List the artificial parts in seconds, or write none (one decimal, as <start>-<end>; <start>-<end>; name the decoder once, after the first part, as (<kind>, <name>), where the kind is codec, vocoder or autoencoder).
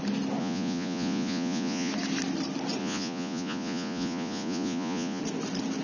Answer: 0.4-1.9 (vocoder, Vocos); 2.8-5.2